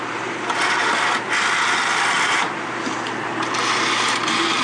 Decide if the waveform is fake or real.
real